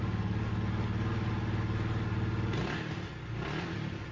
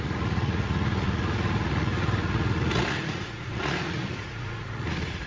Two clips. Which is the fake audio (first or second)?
second